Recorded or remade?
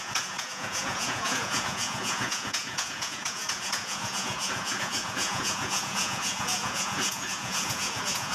remade